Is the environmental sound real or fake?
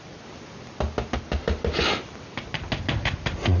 real